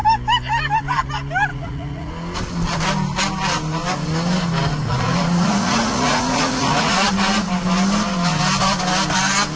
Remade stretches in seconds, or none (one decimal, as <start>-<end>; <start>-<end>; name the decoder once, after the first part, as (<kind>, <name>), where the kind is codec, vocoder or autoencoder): 1.5-2.1 (vocoder, Vocos); 4.9-7.1